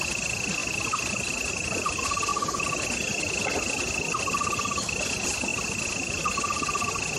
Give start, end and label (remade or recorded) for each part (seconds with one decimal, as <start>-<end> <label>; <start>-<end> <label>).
0.0-7.2 recorded